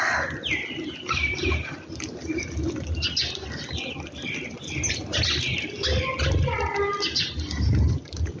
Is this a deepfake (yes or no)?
no